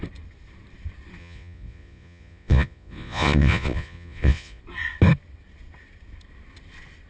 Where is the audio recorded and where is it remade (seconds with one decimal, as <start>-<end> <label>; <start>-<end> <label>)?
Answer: 0.0-1.2 recorded; 1.2-4.6 remade; 4.6-7.1 recorded

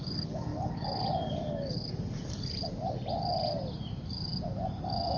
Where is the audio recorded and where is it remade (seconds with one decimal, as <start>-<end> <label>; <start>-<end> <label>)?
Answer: 0.0-5.2 recorded

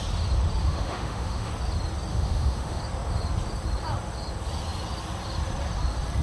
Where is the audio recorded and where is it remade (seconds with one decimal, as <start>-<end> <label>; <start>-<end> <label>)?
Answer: 0.0-0.6 recorded; 0.6-1.5 remade; 1.5-2.1 recorded; 2.1-2.8 remade; 2.8-6.2 recorded

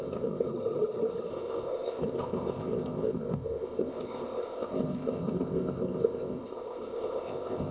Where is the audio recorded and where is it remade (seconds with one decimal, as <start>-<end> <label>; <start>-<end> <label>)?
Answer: 0.0-0.5 remade; 0.5-1.3 recorded; 1.3-7.7 remade

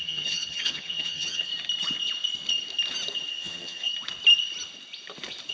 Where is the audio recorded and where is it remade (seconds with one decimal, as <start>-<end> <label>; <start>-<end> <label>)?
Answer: 0.0-1.5 remade; 1.5-3.3 recorded; 3.3-3.9 remade; 3.9-5.5 recorded

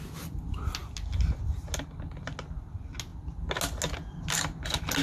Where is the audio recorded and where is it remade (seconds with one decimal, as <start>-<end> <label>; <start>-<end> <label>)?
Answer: 0.0-5.0 recorded

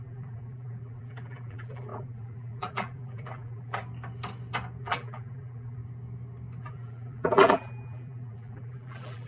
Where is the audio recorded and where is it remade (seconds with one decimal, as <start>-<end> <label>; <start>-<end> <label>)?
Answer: 0.0-3.8 remade; 3.8-4.8 recorded; 4.8-5.8 remade; 5.8-6.6 recorded; 6.6-9.3 remade

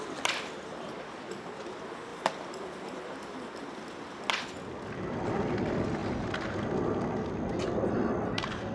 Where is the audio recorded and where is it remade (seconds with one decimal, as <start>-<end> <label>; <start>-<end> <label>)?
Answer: 0.0-8.7 recorded